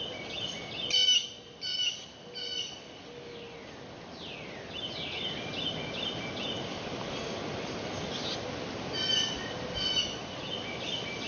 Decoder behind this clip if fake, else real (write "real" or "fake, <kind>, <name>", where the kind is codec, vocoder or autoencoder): real